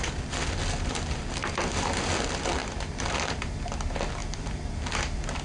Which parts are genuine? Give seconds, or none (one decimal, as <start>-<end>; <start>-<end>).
0.0-1.4; 2.2-2.6; 3.4-4.2